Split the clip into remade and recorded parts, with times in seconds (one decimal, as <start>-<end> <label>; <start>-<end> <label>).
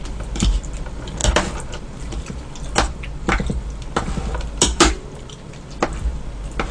0.0-6.7 recorded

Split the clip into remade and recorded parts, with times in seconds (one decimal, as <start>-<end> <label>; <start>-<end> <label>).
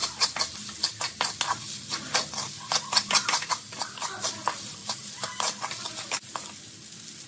0.0-7.3 recorded